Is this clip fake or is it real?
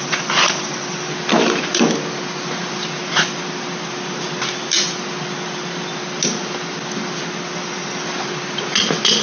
real